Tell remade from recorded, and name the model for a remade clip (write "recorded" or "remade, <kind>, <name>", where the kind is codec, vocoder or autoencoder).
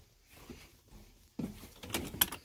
recorded